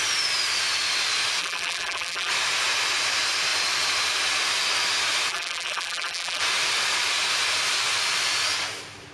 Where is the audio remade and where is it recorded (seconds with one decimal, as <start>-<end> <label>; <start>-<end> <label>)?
0.0-1.4 recorded; 1.4-2.3 remade; 2.3-5.3 recorded; 5.3-6.4 remade; 6.4-9.1 recorded